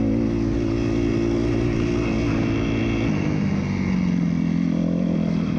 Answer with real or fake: real